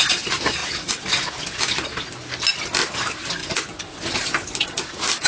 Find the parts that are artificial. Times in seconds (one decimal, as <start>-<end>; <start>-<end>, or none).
none